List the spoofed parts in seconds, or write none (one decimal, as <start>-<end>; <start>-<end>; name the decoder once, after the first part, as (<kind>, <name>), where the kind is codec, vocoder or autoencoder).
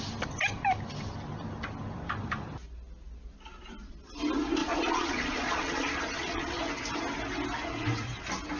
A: 4.6-6.6 (vocoder, Vocos)